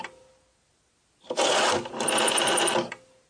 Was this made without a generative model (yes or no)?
yes